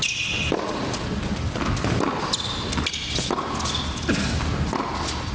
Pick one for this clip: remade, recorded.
recorded